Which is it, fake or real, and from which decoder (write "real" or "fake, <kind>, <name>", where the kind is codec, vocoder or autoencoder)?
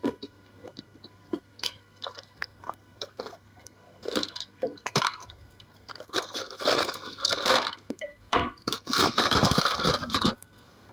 fake, codec, SNAC